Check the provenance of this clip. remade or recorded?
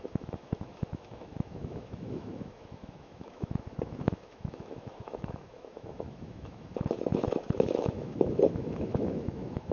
remade